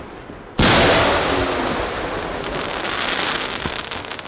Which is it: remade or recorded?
recorded